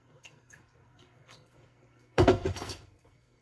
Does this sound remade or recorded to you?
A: remade